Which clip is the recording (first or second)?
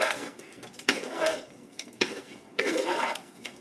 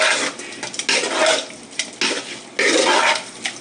second